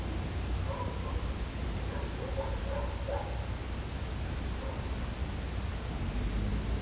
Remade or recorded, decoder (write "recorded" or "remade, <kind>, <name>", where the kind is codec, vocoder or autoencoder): recorded